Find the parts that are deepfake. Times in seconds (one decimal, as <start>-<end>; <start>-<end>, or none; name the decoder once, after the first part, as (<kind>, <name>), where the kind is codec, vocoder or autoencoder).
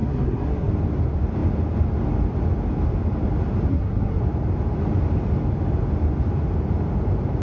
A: 0.0-0.7 (codec, SNAC); 3.7-4.2